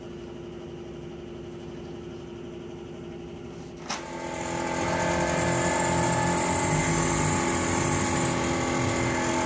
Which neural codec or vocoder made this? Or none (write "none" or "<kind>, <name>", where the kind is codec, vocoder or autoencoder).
none